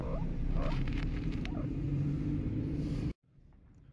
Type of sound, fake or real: fake